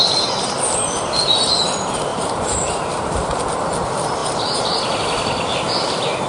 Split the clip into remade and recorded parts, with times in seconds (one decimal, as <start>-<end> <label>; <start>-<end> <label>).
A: 0.0-2.1 recorded; 2.1-2.8 remade; 2.8-4.2 recorded; 4.2-4.8 remade; 4.8-6.3 recorded